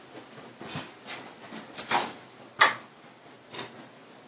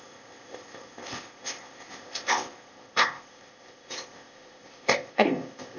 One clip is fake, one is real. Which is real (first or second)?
first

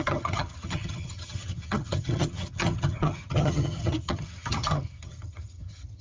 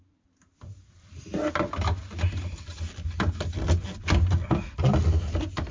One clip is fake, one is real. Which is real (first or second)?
second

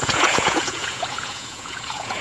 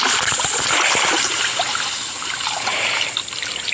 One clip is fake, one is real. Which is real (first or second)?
second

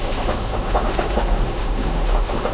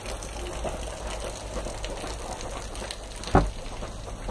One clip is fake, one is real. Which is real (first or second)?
second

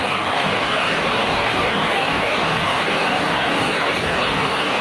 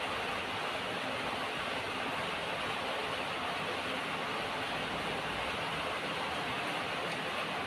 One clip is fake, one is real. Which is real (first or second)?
second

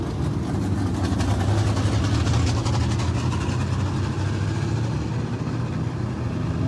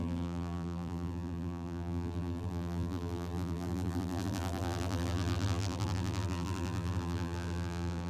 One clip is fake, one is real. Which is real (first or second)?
first